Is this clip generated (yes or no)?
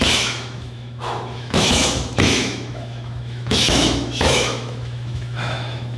yes